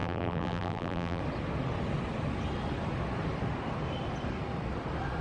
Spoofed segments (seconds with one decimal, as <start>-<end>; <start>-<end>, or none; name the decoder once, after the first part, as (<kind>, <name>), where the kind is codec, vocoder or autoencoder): 0.0-1.2 (vocoder, BigVGAN v2)

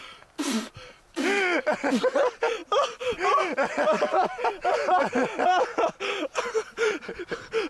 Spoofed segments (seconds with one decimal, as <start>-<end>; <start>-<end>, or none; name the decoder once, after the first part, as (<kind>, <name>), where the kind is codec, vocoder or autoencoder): 2.6-7.2 (vocoder, BigVGAN v2)

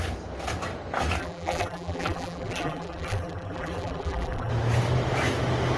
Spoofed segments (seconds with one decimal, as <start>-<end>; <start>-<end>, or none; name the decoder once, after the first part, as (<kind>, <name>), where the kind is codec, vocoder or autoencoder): 1.2-4.5 (vocoder, BigVGAN v2)

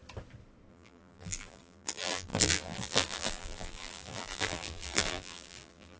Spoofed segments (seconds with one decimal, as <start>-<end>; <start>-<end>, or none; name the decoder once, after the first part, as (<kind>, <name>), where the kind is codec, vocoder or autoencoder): 0.7-6.0 (vocoder, BigVGAN v2)

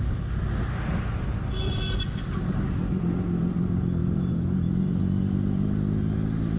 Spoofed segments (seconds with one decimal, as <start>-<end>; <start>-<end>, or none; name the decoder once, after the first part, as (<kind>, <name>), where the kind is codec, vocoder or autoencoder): 4.0-5.0 (vocoder, BigVGAN v2)

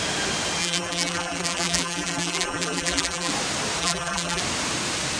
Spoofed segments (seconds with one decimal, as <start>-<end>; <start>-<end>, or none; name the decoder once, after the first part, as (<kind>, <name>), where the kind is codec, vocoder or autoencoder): 0.6-3.3 (vocoder, BigVGAN v2); 3.8-4.4